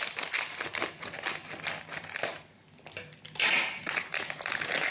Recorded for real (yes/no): yes